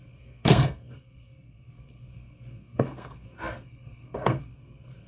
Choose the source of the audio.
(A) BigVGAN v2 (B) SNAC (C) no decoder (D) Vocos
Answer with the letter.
B